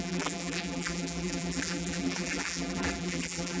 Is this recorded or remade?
remade